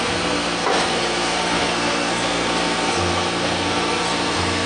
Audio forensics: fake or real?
fake